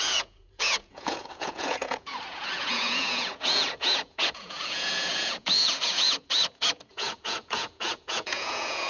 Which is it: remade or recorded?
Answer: remade